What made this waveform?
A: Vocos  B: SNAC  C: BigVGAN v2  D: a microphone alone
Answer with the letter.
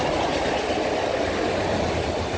D